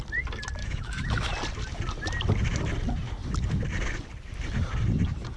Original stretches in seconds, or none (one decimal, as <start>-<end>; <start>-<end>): 0.0-0.6; 1.3-5.4